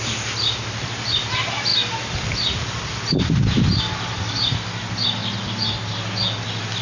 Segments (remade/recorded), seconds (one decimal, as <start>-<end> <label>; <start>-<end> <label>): 0.0-6.8 recorded